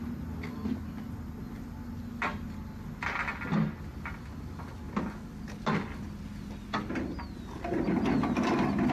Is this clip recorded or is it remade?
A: recorded